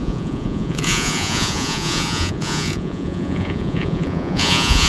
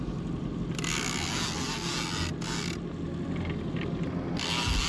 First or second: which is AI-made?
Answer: first